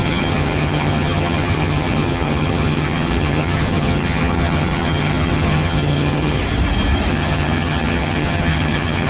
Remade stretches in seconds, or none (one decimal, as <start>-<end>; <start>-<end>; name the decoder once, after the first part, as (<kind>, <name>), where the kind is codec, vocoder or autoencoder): 0.0-6.4 (vocoder, HiFi-GAN); 7.1-9.1